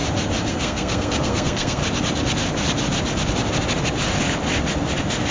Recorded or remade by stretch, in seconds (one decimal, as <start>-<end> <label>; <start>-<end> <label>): 0.0-0.5 recorded; 0.5-1.8 remade; 1.8-5.3 recorded